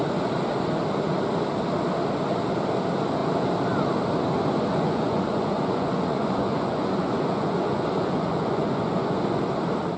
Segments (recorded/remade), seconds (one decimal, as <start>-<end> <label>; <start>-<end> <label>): 0.0-4.7 recorded; 4.7-9.4 remade; 9.4-10.0 recorded